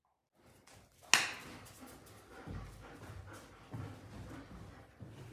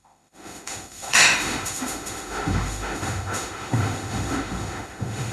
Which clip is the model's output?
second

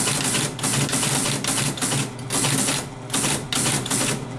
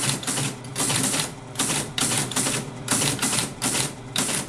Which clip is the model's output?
second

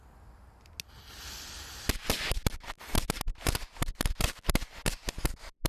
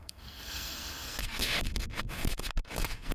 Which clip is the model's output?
second